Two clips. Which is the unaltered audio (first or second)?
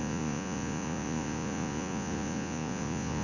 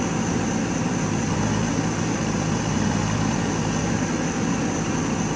second